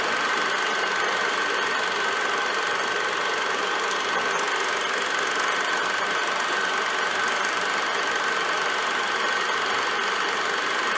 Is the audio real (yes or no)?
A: yes